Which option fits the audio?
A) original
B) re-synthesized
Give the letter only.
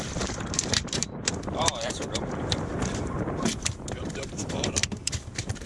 B